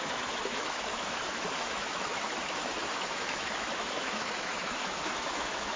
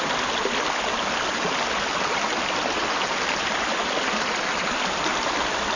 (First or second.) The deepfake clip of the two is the first